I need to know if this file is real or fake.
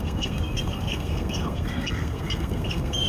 fake